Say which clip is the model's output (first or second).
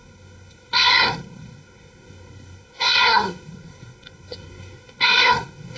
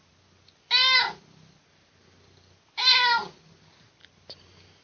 first